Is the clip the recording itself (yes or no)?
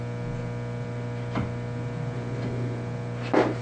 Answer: yes